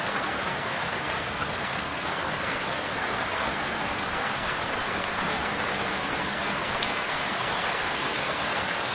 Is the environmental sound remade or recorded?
remade